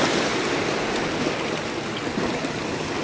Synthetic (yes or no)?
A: no